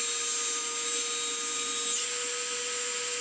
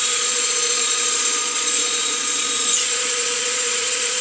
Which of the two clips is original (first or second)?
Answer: first